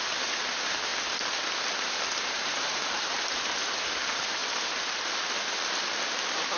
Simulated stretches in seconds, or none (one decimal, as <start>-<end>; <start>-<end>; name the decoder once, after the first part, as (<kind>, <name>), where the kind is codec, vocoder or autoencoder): 0.0-0.9 (vocoder, BigVGAN v2); 2.2-4.4